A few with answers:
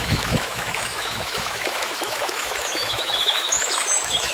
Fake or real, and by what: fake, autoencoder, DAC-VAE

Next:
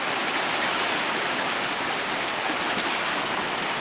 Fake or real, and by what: real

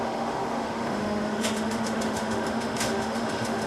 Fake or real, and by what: fake, autoencoder, DAC-VAE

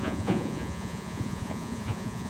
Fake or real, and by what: fake, vocoder, Vocos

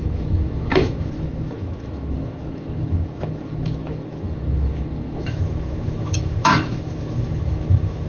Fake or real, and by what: fake, autoencoder, DAC-VAE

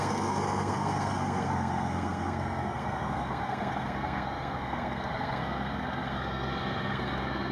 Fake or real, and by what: fake, codec, SNAC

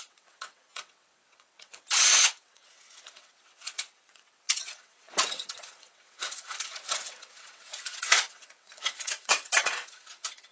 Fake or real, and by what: fake, vocoder, WaveNeXt